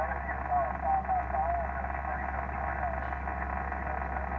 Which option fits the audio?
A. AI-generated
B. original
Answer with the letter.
B